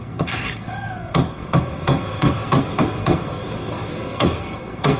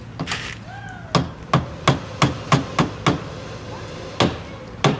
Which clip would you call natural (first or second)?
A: second